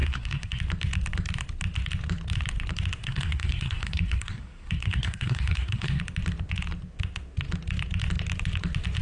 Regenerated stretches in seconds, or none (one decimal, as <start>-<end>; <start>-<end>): 0.0-0.6; 3.0-6.0